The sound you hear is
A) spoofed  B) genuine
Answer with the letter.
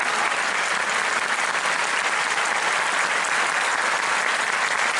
B